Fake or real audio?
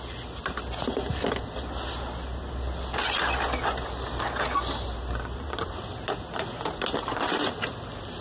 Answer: real